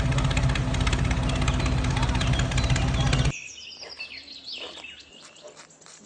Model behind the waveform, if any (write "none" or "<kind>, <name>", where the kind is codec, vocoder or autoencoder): none